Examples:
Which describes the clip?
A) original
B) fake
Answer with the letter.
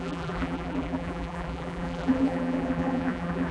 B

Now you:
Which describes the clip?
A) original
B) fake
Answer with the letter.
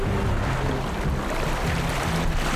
A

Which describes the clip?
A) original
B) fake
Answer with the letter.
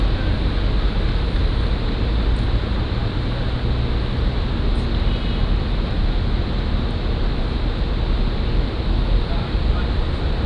A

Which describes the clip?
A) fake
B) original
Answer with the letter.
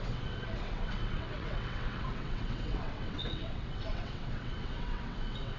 A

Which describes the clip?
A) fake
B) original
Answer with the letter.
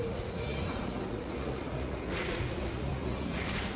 A